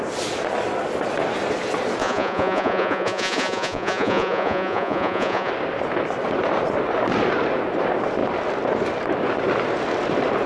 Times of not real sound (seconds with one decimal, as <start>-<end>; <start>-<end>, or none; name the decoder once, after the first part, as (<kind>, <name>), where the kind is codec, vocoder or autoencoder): 2.0-5.5 (vocoder, Vocos)